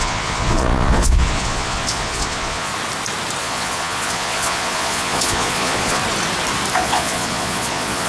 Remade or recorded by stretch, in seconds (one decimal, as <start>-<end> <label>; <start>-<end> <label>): 0.0-2.7 remade; 2.7-3.4 recorded; 3.4-6.0 remade; 6.0-6.7 recorded; 6.7-8.1 remade